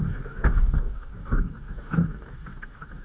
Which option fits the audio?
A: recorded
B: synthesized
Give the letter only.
B